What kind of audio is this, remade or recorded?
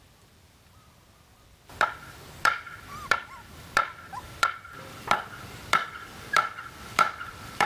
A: remade